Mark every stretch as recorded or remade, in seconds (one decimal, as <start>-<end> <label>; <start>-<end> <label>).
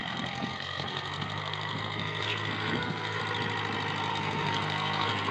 0.0-3.2 remade; 3.2-4.1 recorded; 4.1-5.3 remade